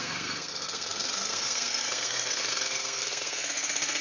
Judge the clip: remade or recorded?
remade